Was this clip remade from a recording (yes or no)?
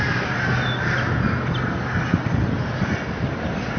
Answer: no